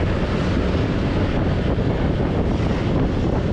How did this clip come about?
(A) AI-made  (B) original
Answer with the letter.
B